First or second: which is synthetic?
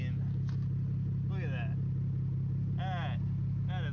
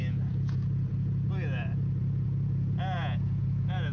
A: second